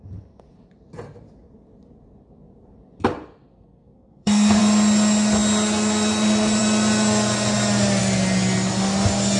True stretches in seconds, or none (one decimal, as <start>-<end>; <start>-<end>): 0.0-3.5; 4.6-9.4